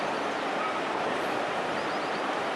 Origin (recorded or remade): remade